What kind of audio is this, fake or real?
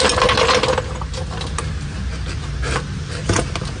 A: real